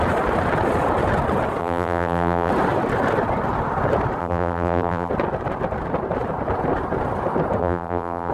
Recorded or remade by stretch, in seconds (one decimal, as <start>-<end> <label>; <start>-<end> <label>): 0.0-1.6 recorded; 1.6-2.5 remade; 2.5-4.2 recorded; 4.2-5.1 remade; 5.1-7.6 recorded; 7.6-8.3 remade